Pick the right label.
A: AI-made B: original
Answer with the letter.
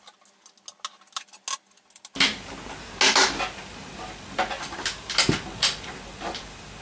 B